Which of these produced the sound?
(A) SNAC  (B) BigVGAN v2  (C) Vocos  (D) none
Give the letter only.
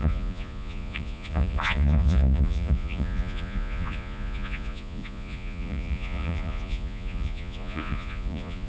C